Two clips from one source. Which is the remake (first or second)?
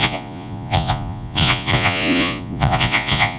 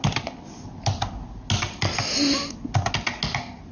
first